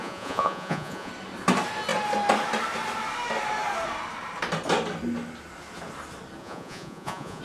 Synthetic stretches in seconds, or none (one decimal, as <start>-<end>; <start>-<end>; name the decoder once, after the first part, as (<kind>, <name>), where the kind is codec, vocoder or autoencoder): 0.0-1.1 (vocoder, Vocos); 6.4-7.4